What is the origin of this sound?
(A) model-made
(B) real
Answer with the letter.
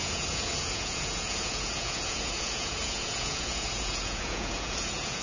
A